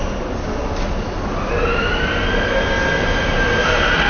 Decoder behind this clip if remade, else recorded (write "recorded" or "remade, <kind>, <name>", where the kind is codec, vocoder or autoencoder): recorded